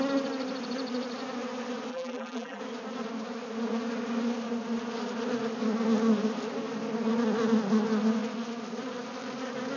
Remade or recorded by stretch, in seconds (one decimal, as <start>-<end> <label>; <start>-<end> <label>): 0.0-1.9 recorded; 1.9-2.6 remade; 2.6-9.8 recorded